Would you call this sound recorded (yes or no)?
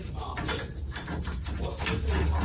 yes